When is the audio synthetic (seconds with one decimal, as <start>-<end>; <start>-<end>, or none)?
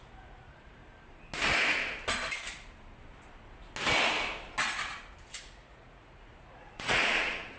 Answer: 0.0-0.8; 5.4-7.6